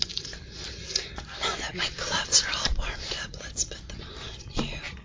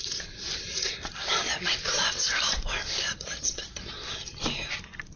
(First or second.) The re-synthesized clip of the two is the second